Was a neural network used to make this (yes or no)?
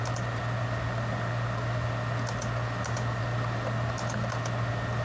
no